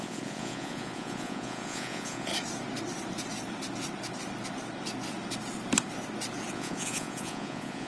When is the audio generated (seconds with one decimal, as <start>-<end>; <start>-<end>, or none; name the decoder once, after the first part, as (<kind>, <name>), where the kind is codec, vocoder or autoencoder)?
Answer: 0.0-2.3 (vocoder, Vocos); 6.5-7.9